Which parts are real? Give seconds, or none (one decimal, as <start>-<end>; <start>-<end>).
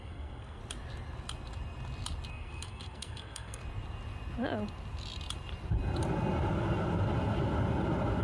0.6-2.3; 3.6-8.2